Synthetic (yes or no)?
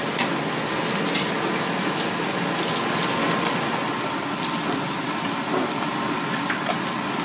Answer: no